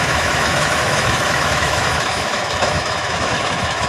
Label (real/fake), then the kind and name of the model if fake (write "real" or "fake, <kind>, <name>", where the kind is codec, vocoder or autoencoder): fake, autoencoder, DAC-VAE